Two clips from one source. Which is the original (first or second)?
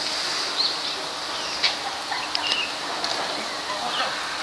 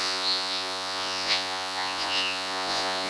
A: first